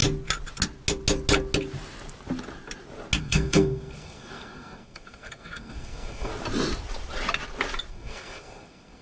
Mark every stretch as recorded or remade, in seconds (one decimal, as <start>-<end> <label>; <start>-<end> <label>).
0.0-3.2 recorded; 3.2-6.3 remade; 6.3-7.9 recorded; 7.9-9.0 remade